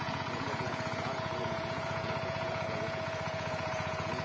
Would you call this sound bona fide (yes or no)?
no